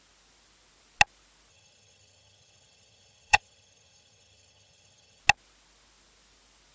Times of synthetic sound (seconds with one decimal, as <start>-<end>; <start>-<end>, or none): 1.5-5.2